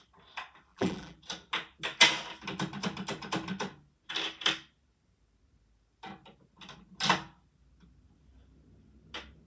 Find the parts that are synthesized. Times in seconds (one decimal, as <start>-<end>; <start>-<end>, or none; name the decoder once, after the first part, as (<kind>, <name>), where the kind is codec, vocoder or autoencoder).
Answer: 0.7-1.2 (vocoder, BigVGAN v2)